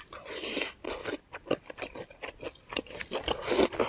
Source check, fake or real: fake